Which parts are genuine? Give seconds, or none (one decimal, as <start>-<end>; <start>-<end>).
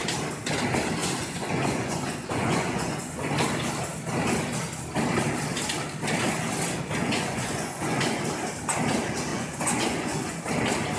0.0-1.0; 3.3-7.0; 8.2-9.3; 10.4-11.0